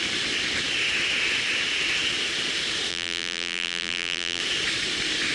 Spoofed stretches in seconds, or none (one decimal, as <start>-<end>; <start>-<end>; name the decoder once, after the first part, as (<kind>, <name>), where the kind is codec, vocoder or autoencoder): 2.9-4.4 (vocoder, BigVGAN v2)